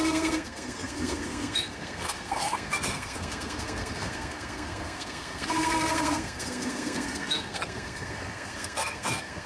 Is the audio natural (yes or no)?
no